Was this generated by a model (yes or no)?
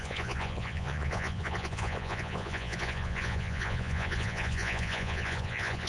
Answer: yes